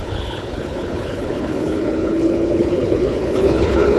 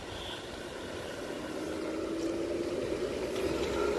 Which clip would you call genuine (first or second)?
second